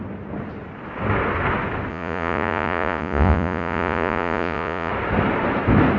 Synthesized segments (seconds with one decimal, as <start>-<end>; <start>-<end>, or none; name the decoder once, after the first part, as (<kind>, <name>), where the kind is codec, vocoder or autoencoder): 1.9-4.9 (vocoder, Vocos)